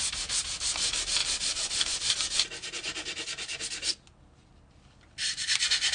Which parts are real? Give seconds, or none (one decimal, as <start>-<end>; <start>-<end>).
0.0-5.9